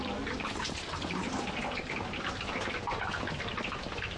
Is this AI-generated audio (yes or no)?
no